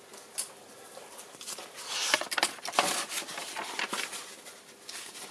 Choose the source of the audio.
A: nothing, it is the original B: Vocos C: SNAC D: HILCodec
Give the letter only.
A